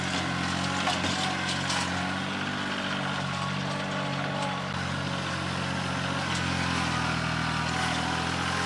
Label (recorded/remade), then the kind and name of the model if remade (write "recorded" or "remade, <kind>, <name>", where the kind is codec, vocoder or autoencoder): recorded